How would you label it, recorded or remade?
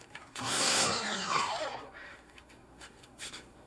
remade